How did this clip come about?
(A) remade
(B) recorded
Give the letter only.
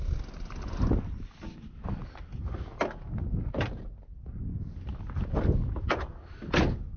B